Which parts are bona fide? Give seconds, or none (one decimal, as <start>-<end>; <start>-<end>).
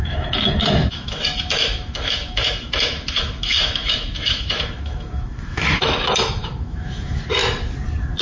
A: 7.4-8.2